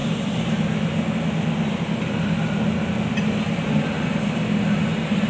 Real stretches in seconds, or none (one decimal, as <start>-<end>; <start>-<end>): 0.0-5.3